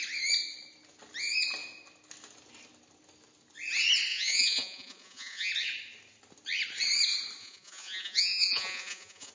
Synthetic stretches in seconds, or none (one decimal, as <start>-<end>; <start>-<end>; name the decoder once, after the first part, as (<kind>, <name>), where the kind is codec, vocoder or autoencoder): 4.1-5.5 (vocoder, Vocos); 7.4-9.3